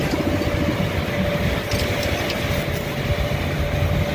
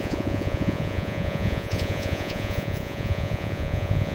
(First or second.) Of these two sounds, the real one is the first